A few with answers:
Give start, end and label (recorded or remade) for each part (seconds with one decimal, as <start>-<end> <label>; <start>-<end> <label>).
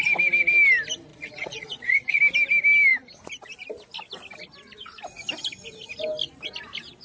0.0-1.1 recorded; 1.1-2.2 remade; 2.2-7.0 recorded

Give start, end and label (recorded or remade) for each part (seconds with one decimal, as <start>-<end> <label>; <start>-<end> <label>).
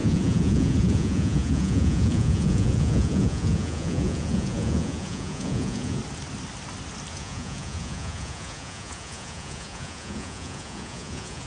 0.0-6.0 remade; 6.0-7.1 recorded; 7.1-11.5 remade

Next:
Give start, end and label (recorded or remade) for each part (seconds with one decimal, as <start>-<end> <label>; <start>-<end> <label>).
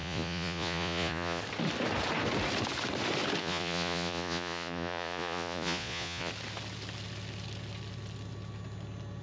0.0-1.4 remade; 1.4-3.4 recorded; 3.4-6.3 remade; 6.3-9.2 recorded